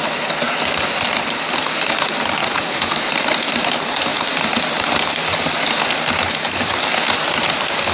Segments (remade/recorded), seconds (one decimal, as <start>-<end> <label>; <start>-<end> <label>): 0.0-2.4 recorded; 2.4-2.9 remade; 2.9-7.9 recorded